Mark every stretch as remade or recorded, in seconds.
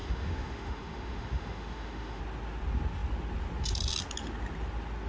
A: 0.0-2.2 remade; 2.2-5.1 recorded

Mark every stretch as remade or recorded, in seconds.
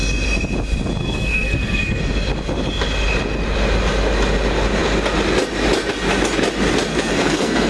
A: 0.0-1.0 recorded; 1.0-2.0 remade; 2.0-6.9 recorded; 6.9-7.7 remade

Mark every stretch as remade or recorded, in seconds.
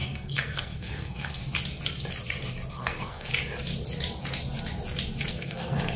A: 0.0-1.4 remade; 1.4-2.7 recorded; 2.7-3.3 remade; 3.3-5.3 recorded; 5.3-6.0 remade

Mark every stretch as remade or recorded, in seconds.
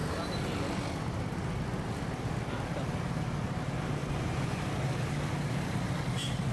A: 0.0-4.0 recorded; 4.0-4.6 remade; 4.6-6.5 recorded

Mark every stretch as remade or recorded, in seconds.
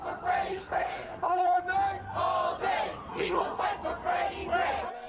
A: 0.0-0.5 recorded; 0.5-1.6 remade; 1.6-3.1 recorded; 3.1-3.6 remade; 3.6-5.1 recorded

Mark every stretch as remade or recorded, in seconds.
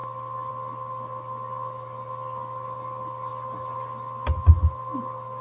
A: 0.0-5.4 recorded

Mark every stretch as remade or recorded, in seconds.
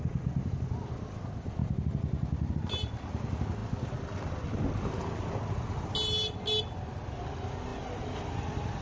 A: 0.0-8.8 recorded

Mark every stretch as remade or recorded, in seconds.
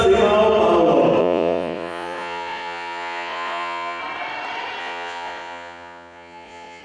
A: 0.0-1.2 recorded; 1.2-4.0 remade; 4.0-4.8 recorded; 4.8-6.8 remade